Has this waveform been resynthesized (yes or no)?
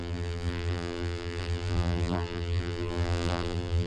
yes